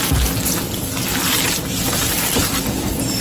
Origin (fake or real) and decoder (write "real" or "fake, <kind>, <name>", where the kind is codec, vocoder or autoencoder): real